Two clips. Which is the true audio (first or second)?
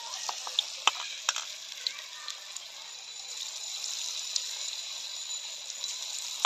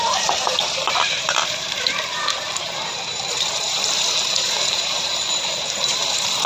first